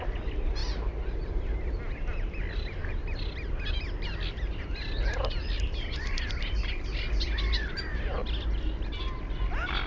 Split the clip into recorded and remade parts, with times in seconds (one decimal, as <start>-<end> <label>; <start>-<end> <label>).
0.0-9.9 recorded